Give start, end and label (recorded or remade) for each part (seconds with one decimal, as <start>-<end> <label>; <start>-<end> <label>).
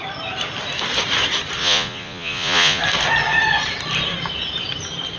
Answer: 0.0-1.6 recorded; 1.6-2.8 remade; 2.8-5.2 recorded